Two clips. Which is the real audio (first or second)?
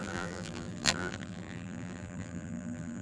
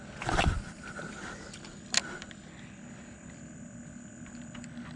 second